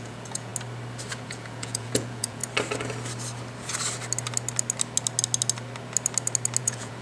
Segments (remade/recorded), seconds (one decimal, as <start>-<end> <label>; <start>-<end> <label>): 0.0-0.5 remade; 0.5-1.2 recorded; 1.2-2.4 remade; 2.4-6.6 recorded; 6.6-7.0 remade

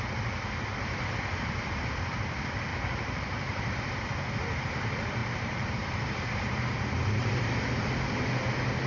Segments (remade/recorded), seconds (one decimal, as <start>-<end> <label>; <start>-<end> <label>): 0.0-2.7 recorded; 2.7-3.7 remade; 3.7-5.2 recorded; 5.2-7.5 remade; 7.5-8.9 recorded

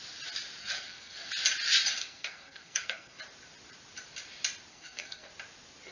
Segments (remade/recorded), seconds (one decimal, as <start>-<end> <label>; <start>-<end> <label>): 0.0-0.6 recorded; 0.6-1.3 remade; 1.3-2.0 recorded; 2.0-3.2 remade; 3.2-4.7 recorded; 4.7-5.3 remade; 5.3-5.9 recorded